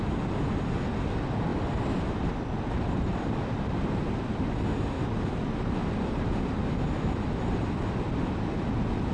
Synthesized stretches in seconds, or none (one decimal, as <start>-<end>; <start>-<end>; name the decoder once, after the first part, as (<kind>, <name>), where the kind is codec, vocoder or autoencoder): none